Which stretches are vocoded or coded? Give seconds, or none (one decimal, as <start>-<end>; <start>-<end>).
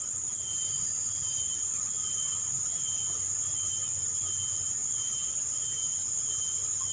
none